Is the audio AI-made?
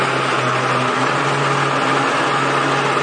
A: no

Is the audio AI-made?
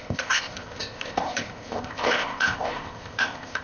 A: yes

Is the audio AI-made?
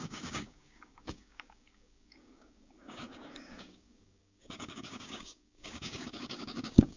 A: yes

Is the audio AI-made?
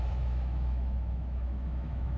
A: yes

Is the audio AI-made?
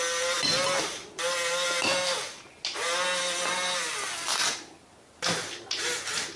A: no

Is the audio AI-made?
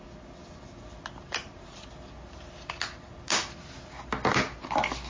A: no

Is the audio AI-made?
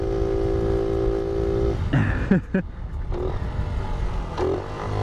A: no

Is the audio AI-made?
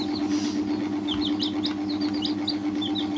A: no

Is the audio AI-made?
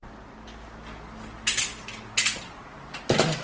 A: no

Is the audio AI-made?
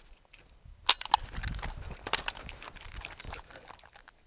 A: no